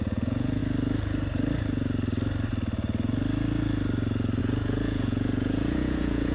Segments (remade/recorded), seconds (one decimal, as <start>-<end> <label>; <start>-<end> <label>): 0.0-0.6 remade; 0.6-4.4 recorded; 4.4-6.3 remade